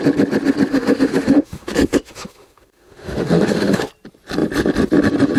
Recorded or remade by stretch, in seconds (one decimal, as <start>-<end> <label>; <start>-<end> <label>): 0.0-0.7 recorded; 0.7-3.9 remade; 3.9-5.4 recorded